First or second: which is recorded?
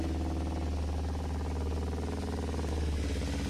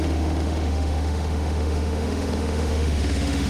first